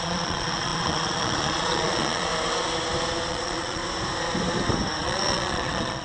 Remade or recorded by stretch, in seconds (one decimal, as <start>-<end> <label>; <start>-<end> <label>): 0.0-2.3 remade; 2.3-3.3 recorded; 3.3-3.8 remade; 3.8-5.0 recorded; 5.0-6.0 remade